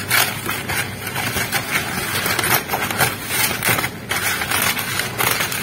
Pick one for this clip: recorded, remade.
recorded